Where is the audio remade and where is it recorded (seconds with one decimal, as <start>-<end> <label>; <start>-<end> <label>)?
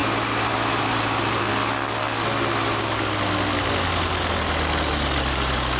0.0-1.5 remade; 1.5-5.8 recorded